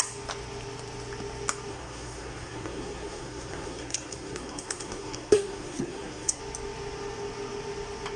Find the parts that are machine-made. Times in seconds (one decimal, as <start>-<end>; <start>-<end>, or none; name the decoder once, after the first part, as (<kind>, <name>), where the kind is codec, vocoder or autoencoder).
1.7-6.4 (codec, SNAC)